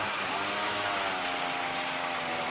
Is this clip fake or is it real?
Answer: real